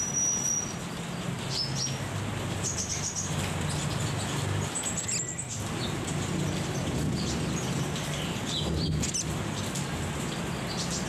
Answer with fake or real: real